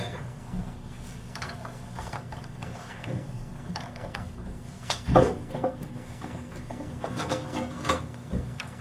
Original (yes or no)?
no